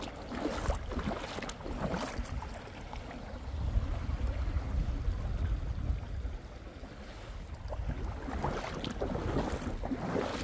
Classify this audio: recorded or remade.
recorded